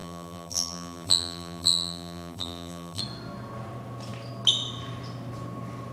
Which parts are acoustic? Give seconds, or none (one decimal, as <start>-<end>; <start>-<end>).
3.0-5.9